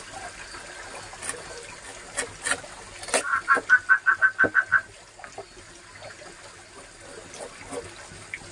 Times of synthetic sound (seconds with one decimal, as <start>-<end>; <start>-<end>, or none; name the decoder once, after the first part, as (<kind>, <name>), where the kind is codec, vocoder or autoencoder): none